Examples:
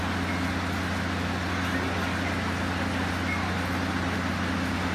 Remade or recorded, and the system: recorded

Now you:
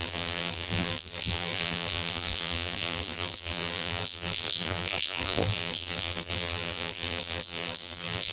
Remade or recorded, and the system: remade, vocoder, BigVGAN v2